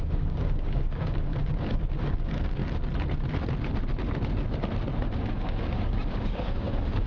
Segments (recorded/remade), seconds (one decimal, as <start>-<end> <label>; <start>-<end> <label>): 0.0-2.6 remade; 2.6-5.3 recorded; 5.3-7.1 remade